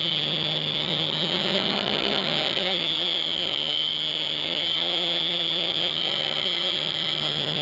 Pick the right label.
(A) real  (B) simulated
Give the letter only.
B